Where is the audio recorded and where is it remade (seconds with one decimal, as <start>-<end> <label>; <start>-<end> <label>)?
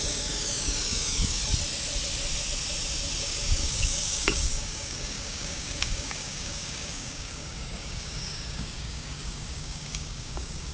0.0-1.4 remade; 1.4-3.2 recorded; 3.2-10.7 remade